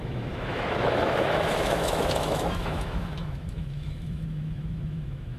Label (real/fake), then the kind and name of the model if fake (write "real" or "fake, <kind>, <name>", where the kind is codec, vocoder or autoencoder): fake, autoencoder, DAC-VAE